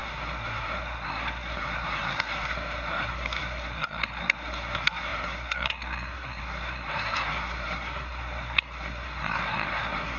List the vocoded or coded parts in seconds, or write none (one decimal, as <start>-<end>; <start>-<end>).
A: 0.0-10.2